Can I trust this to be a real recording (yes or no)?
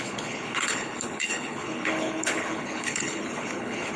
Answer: no